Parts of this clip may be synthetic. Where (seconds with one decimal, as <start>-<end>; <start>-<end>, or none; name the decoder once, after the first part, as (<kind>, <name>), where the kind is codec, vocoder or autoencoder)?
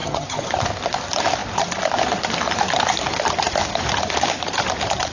0.0-0.5 (vocoder, HiFi-GAN)